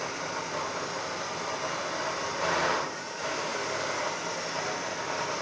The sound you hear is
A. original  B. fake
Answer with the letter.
A